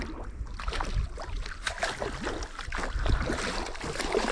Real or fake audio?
real